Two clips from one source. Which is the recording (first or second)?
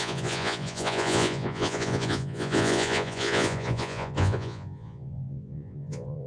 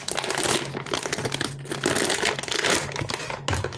second